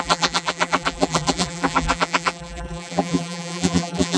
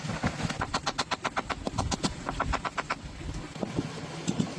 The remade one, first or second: first